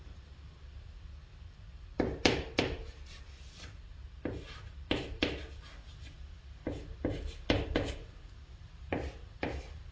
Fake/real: fake